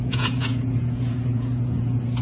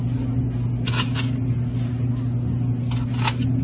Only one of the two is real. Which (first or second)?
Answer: second